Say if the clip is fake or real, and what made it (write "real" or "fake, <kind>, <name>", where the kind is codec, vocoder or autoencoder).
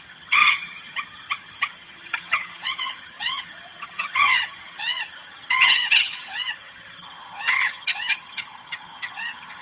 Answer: fake, vocoder, HiFi-GAN